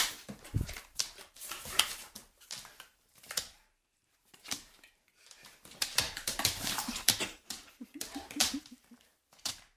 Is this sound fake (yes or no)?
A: yes